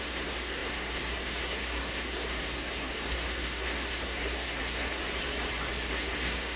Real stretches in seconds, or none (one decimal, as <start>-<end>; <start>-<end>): 5.0-5.9